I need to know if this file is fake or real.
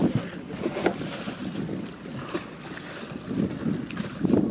real